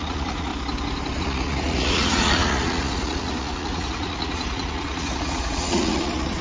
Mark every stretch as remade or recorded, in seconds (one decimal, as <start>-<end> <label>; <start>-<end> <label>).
0.0-0.5 remade; 0.5-1.2 recorded; 1.2-6.4 remade